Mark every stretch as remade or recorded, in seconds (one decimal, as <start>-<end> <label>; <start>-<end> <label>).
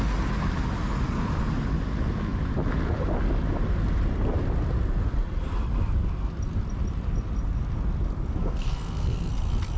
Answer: 0.0-8.4 recorded; 8.4-9.3 remade; 9.3-9.8 recorded